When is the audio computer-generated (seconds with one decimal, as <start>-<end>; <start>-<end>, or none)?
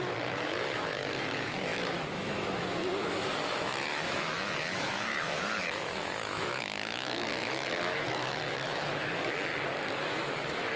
0.0-9.5; 10.1-10.8